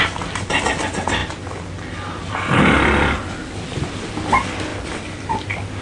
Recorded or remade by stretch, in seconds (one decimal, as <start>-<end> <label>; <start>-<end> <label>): 0.0-5.8 recorded